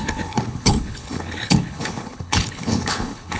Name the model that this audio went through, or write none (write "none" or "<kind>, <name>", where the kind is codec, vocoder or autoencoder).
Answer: codec, HILCodec